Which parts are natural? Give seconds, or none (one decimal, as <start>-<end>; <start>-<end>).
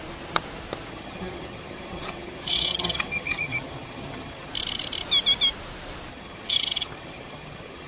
0.0-0.9; 4.5-6.1